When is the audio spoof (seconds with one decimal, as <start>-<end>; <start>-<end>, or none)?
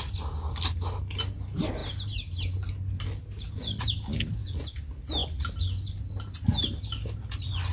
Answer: none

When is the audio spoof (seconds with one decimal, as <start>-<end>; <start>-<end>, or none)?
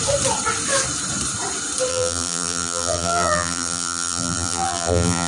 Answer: 1.9-5.3